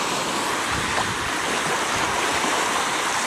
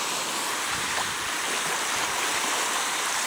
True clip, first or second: first